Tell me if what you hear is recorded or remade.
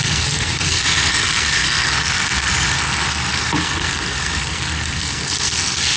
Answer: remade